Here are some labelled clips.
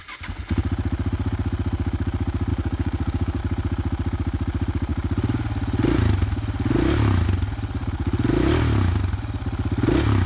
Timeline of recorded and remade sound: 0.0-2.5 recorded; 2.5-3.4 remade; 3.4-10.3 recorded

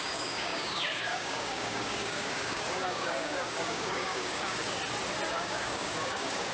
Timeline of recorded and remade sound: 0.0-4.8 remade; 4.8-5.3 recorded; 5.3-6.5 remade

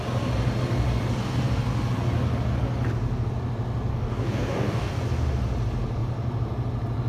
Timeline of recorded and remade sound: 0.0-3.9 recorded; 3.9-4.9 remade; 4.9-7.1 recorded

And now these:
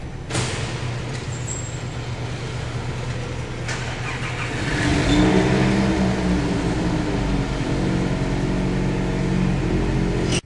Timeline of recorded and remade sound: 0.0-10.5 recorded

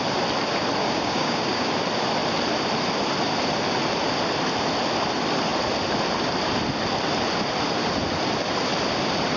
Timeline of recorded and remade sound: 0.0-0.8 recorded; 0.8-1.7 remade; 1.7-9.4 recorded

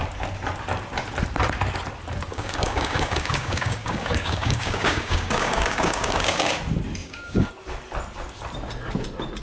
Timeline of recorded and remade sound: 0.0-2.3 recorded; 2.3-6.6 remade; 6.6-7.0 recorded; 7.0-7.5 remade; 7.5-9.4 recorded